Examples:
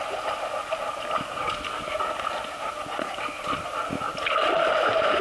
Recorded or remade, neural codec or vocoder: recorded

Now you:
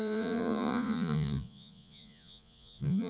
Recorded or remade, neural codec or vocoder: remade, vocoder, Vocos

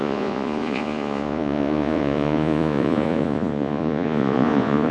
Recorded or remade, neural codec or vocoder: remade, vocoder, Vocos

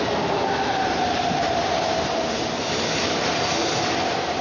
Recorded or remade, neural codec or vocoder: recorded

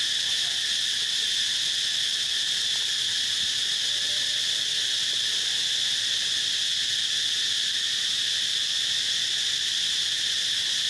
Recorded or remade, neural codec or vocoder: recorded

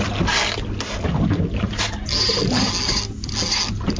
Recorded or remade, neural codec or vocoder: recorded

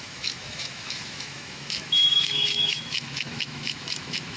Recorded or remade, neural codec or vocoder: remade, autoencoder, DAC-VAE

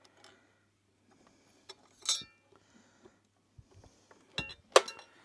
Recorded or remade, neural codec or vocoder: recorded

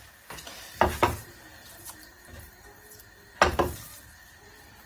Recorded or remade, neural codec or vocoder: recorded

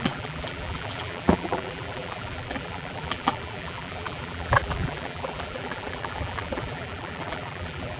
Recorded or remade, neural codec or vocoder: remade, vocoder, BigVGAN v2